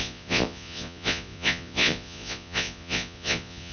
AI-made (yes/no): yes